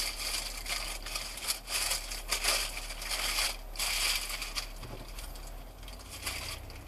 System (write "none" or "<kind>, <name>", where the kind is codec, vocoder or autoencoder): none